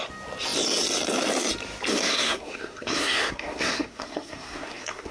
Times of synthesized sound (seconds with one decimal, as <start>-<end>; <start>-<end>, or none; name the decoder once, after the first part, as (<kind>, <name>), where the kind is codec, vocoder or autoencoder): 1.9-5.1 (codec, SNAC)